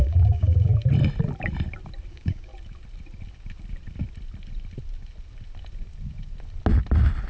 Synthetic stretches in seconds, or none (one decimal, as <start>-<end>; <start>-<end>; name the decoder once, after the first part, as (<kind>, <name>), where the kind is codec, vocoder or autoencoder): 0.0-0.7 (codec, DAC); 2.1-2.5